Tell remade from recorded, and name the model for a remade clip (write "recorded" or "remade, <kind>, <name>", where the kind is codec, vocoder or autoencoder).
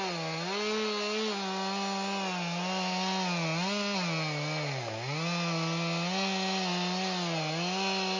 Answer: recorded